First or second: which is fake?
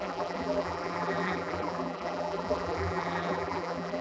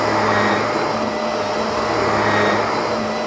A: first